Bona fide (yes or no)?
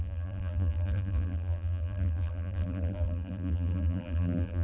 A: no